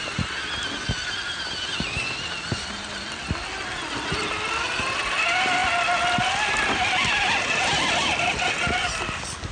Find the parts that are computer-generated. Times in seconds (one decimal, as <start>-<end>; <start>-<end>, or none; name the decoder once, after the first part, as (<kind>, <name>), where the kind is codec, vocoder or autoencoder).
none